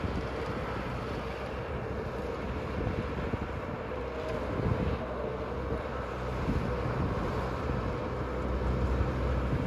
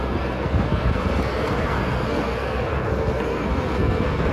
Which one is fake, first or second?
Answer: second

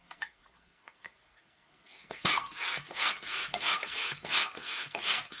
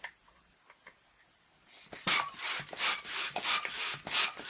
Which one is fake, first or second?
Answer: first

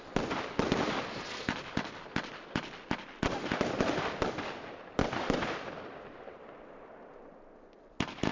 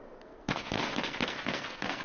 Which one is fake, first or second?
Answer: second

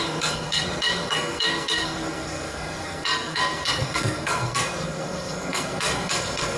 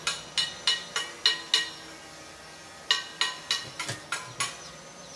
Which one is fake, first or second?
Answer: first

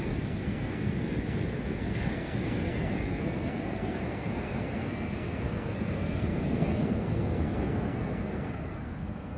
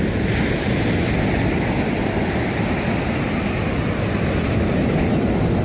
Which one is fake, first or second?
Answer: first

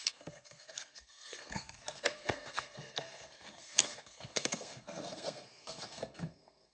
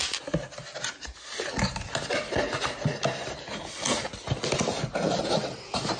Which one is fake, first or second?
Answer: first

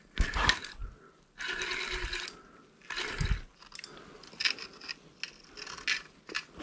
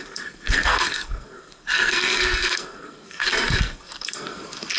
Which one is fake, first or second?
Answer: second